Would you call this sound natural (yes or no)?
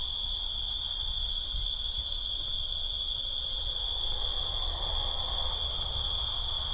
yes